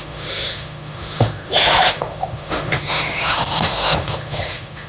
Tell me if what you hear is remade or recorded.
remade